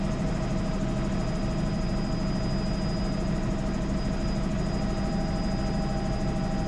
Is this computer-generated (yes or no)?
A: no